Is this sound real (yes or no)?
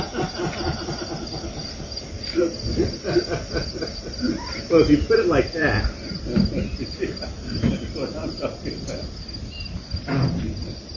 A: no